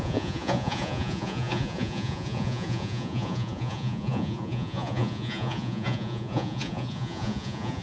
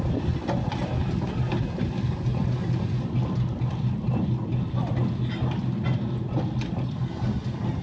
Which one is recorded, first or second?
second